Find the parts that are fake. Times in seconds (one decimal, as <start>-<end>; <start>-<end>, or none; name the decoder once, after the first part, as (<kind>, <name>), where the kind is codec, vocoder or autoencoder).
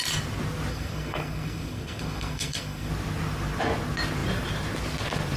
0.7-2.9 (codec, SNAC)